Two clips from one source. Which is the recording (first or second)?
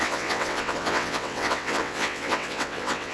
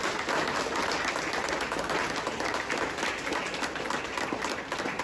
second